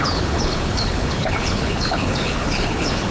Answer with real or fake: fake